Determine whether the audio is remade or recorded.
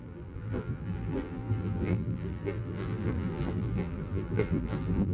remade